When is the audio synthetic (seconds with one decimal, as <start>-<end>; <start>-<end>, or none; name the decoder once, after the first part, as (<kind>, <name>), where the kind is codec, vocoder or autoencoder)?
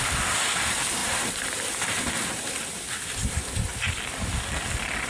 none